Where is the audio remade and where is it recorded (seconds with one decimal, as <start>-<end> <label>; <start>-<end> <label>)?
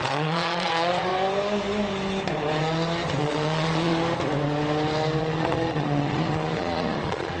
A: 0.0-1.1 remade; 1.1-3.2 recorded; 3.2-3.9 remade; 3.9-5.2 recorded; 5.2-7.4 remade